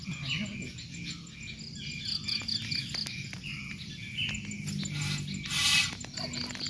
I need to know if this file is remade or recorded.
recorded